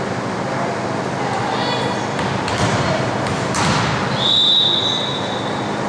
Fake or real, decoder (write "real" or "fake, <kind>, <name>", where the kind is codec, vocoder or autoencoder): real